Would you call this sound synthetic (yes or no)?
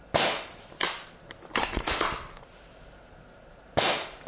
no